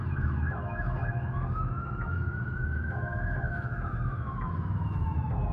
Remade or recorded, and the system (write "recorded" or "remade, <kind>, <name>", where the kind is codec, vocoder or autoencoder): remade, autoencoder, DAC-VAE